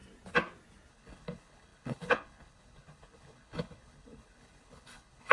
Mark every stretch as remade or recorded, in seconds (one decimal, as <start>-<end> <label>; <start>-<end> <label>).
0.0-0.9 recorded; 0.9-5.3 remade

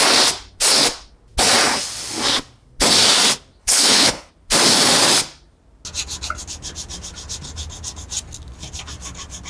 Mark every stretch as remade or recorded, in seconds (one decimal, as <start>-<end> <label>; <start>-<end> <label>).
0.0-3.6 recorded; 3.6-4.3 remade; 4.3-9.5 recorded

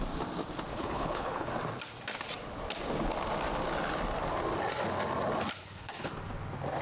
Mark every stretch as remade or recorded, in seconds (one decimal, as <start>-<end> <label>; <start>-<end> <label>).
0.0-0.7 recorded; 0.7-1.5 remade; 1.5-5.6 recorded; 5.6-6.1 remade; 6.1-6.8 recorded

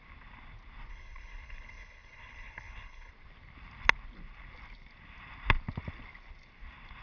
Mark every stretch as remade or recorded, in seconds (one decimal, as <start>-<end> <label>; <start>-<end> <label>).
0.0-0.9 recorded; 0.9-3.1 remade; 3.1-7.0 recorded